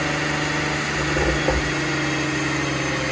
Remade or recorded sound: recorded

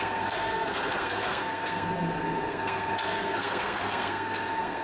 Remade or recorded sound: remade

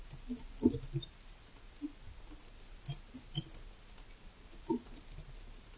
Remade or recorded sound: recorded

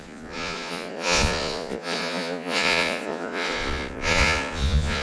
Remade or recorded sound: remade